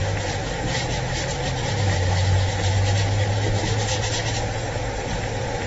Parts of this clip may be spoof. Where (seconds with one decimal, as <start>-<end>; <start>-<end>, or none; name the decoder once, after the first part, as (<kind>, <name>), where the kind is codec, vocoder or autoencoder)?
none